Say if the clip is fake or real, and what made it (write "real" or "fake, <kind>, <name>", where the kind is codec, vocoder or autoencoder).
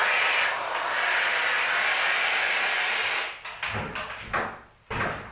real